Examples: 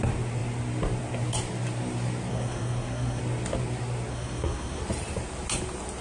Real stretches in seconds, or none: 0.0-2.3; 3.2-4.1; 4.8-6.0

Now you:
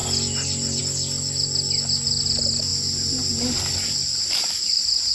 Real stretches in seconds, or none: 0.0-5.1

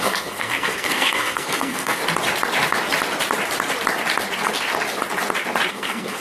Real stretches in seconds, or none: 2.0-5.7